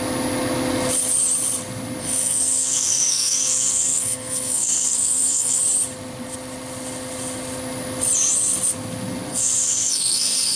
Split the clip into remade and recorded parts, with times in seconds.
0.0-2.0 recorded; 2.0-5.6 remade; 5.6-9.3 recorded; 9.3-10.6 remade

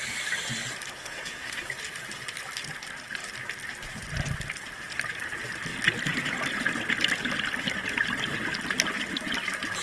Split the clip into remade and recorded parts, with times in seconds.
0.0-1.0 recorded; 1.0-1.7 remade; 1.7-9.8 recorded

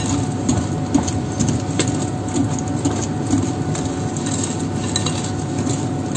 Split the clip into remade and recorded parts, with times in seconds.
0.0-6.2 recorded

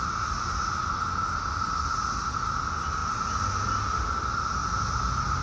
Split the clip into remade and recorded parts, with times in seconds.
0.0-5.4 recorded

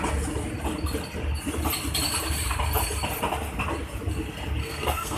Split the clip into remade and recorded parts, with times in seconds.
0.0-4.6 recorded; 4.6-5.2 remade